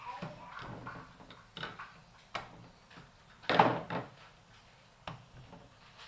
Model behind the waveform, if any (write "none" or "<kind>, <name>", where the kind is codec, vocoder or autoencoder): none